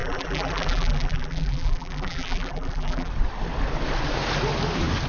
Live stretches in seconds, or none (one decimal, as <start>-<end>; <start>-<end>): 3.1-5.1